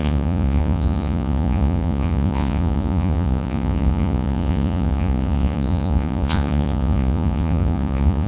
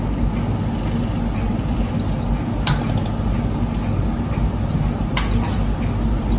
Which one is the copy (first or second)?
first